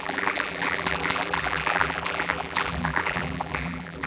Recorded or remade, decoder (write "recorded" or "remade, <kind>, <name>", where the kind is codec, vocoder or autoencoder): remade, vocoder, BigVGAN v2